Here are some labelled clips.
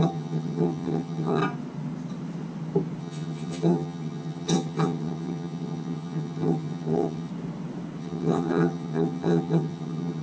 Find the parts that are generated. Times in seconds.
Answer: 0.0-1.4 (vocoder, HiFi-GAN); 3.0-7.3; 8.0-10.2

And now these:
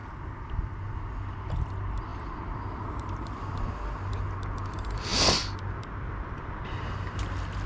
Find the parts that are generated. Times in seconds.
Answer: none

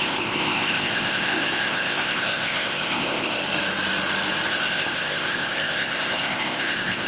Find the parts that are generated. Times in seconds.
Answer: 0.0-3.4 (codec, ZipCodec); 4.5-7.1

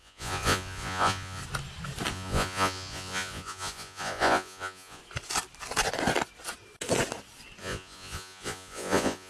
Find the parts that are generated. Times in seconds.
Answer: 0.0-1.4 (vocoder, Vocos); 2.1-5.0; 7.6-9.3